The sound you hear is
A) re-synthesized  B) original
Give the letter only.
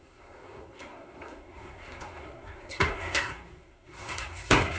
A